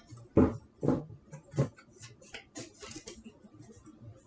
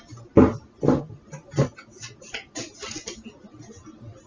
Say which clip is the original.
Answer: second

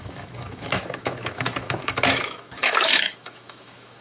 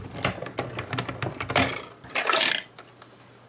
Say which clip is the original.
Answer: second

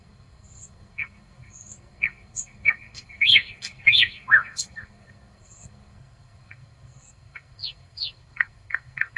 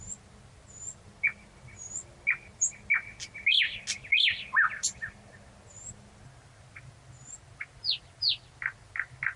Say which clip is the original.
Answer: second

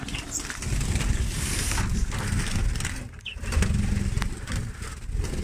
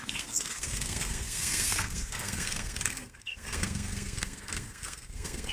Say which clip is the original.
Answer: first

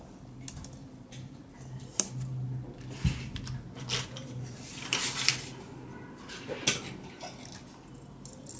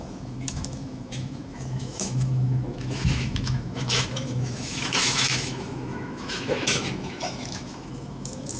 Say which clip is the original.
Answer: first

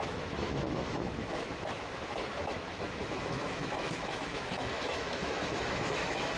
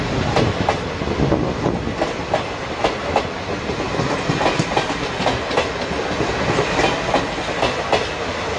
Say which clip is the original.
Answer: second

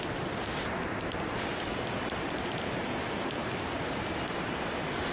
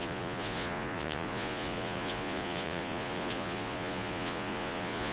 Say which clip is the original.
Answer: first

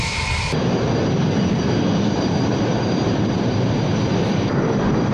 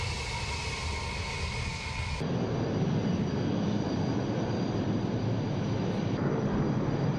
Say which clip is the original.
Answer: second